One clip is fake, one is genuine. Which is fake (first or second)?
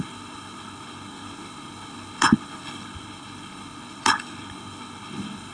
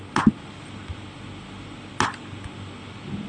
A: first